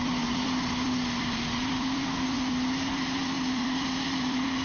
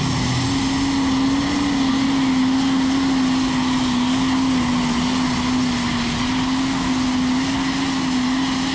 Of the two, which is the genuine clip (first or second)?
second